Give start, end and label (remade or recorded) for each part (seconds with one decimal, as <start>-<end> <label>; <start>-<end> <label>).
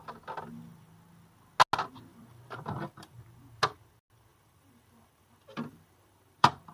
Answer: 0.0-2.1 recorded; 2.1-3.2 remade; 3.2-4.3 recorded; 4.3-6.7 remade